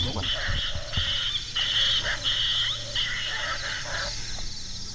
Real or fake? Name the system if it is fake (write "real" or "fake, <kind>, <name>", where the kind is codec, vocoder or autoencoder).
real